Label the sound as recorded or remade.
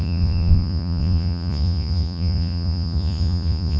remade